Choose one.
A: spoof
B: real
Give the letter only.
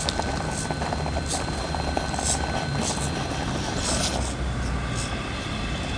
B